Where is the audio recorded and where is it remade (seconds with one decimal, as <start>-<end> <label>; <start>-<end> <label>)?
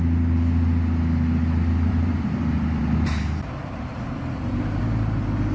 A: 0.0-1.9 recorded; 1.9-4.8 remade; 4.8-5.5 recorded